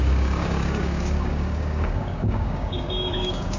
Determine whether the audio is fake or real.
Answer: fake